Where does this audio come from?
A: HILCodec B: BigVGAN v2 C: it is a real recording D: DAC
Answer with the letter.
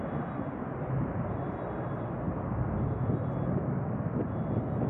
C